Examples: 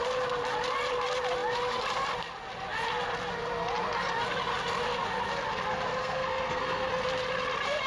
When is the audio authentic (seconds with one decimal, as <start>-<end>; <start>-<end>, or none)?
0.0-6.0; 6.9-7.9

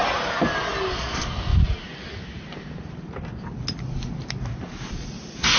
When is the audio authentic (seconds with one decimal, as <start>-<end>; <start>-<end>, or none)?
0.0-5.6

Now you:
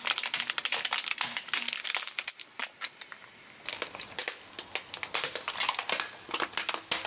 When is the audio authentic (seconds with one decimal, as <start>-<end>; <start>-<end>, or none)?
0.0-7.1

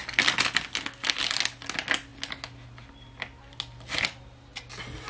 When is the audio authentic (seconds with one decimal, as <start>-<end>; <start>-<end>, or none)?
0.0-5.1